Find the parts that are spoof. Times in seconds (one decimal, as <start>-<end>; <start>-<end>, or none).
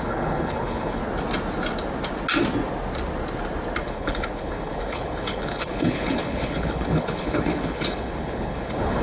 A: 0.0-1.0; 3.8-9.0